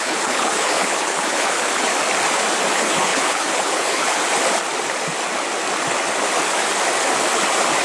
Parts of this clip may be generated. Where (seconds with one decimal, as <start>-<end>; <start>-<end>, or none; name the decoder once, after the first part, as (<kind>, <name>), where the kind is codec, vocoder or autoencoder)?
0.0-1.9 (codec, HILCodec); 2.7-4.2